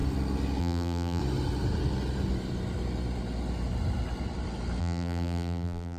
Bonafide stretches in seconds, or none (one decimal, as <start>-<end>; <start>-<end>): 0.0-0.6; 1.2-4.8